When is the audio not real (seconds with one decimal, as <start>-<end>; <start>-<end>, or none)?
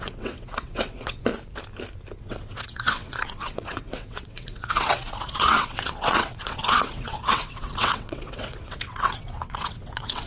0.0-1.3; 2.2-10.3